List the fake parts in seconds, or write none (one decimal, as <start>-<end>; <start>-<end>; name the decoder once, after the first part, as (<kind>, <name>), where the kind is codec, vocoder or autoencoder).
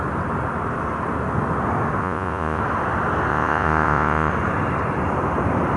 2.0-2.6 (vocoder, Vocos); 3.3-4.3